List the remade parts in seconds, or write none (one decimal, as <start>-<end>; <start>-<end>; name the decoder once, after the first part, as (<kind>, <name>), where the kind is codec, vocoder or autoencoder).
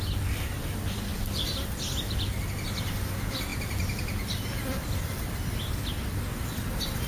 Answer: 1.1-2.3 (vocoder, BigVGAN v2); 3.5-5.8